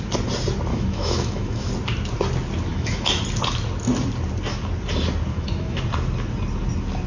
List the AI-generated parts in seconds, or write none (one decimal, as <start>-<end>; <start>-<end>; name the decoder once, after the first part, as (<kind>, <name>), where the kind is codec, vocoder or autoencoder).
0.7-1.7 (autoencoder, DAC-VAE); 2.7-3.2; 5.3-5.8